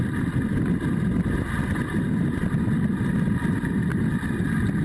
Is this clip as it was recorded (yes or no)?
yes